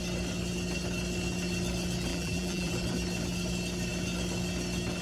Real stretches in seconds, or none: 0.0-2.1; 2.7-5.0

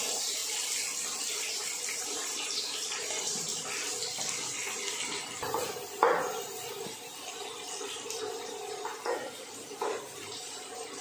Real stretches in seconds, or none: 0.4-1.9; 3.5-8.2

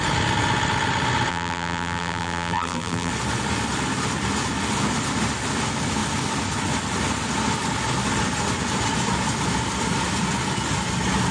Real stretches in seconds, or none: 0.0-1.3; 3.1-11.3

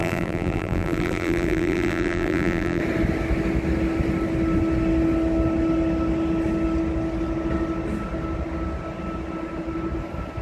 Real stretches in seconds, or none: 2.8-10.4